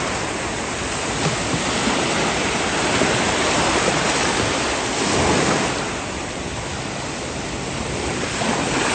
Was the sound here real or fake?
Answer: real